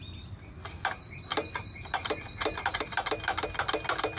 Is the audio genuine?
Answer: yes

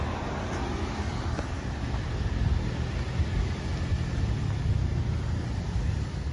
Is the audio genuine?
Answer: yes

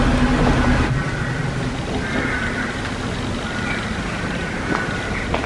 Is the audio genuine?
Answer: yes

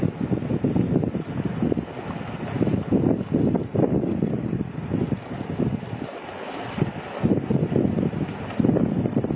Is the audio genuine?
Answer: yes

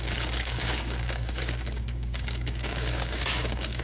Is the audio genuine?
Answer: no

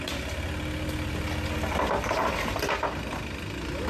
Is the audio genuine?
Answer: yes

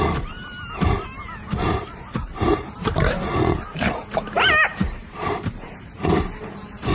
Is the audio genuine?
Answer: no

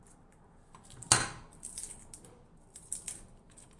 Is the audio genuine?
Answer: yes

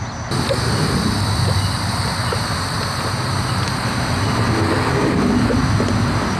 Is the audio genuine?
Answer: yes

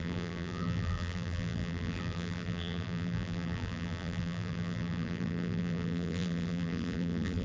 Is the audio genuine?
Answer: no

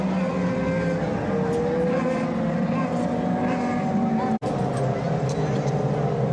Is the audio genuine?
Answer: yes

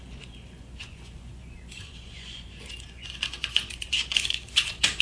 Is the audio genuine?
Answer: no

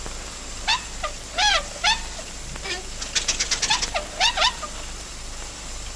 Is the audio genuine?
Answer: yes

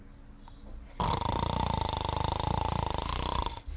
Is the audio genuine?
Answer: yes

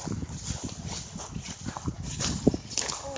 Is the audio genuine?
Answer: yes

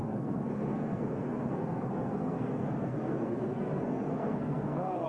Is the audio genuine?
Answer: no